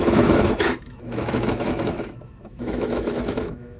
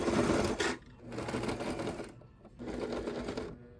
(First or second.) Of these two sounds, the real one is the second